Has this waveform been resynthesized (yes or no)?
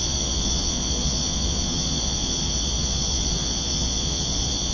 yes